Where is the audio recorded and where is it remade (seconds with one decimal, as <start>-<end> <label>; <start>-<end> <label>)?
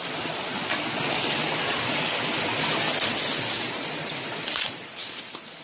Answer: 0.0-2.5 remade; 2.5-4.1 recorded; 4.1-5.6 remade